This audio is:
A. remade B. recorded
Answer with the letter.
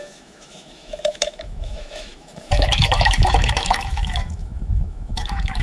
A